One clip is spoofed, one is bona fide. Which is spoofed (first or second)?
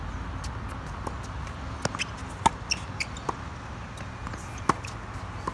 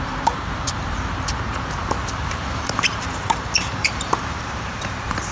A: second